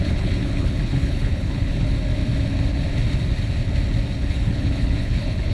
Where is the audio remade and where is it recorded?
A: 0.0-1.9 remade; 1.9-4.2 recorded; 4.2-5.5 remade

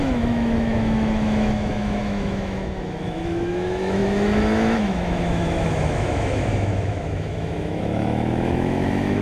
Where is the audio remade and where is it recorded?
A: 0.0-9.2 remade

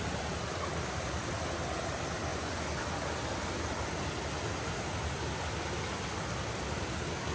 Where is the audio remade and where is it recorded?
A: 0.0-2.3 recorded; 2.3-2.8 remade; 2.8-7.3 recorded

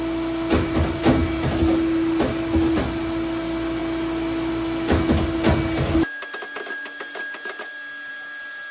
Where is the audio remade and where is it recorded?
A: 0.0-8.7 recorded

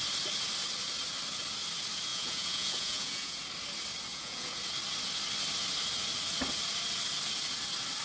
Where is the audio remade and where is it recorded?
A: 0.0-2.1 recorded; 2.1-3.4 remade; 3.4-4.1 recorded; 4.1-4.6 remade; 4.6-8.0 recorded

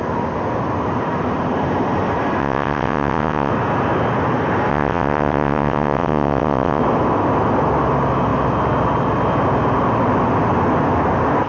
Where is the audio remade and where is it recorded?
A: 0.0-2.4 recorded; 2.4-3.5 remade; 3.5-4.7 recorded; 4.7-6.8 remade; 6.8-11.5 recorded

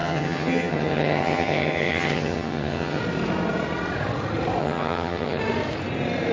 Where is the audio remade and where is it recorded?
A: 0.0-3.0 remade; 3.0-4.6 recorded; 4.6-5.4 remade; 5.4-6.3 recorded

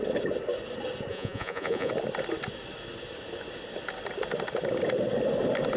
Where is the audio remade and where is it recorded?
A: 0.0-1.1 recorded; 1.1-1.9 remade; 1.9-5.8 recorded